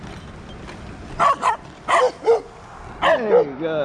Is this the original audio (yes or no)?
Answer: yes